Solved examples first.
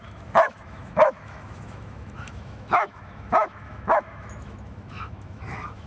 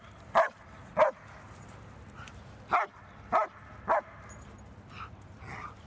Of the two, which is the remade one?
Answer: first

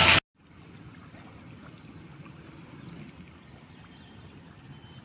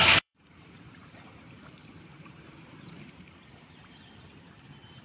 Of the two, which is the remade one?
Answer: second